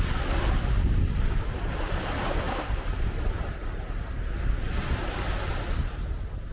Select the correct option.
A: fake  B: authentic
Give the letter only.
B